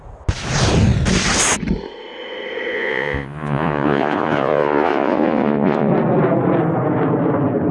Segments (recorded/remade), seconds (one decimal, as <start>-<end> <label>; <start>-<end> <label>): 0.0-2.7 recorded; 2.7-5.9 remade; 5.9-7.7 recorded